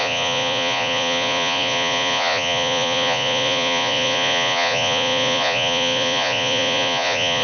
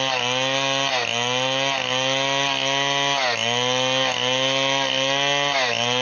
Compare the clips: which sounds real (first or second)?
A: second